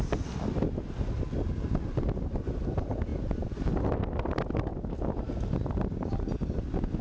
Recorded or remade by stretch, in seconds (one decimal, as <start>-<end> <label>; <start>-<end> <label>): 0.0-7.0 recorded